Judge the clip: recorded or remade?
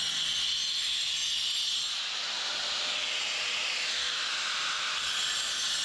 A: recorded